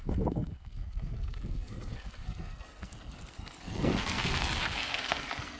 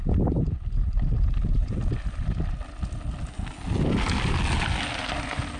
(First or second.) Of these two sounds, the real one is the second